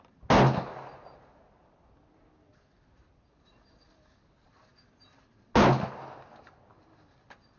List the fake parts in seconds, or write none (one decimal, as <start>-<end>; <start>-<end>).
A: none